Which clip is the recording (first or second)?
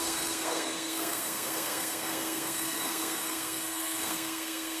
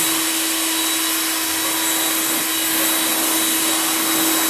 second